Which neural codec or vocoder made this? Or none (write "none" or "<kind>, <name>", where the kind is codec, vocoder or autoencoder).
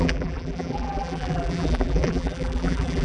vocoder, BigVGAN v2